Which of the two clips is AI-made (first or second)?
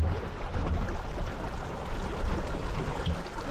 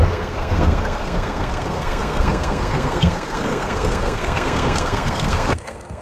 second